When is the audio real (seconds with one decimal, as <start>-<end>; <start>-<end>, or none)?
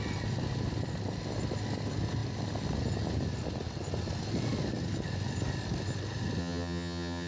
0.0-6.4